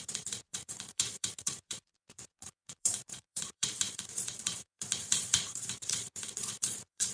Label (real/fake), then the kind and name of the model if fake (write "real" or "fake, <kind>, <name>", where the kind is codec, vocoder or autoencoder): fake, vocoder, Vocos